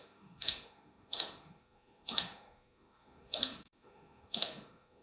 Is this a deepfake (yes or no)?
yes